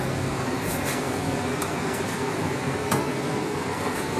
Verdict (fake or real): fake